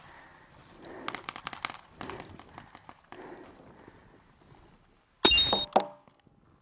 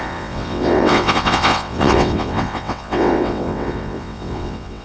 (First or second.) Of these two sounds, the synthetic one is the second